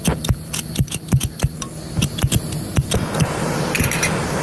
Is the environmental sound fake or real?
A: real